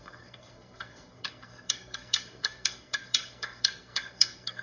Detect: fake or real fake